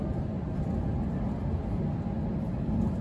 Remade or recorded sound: recorded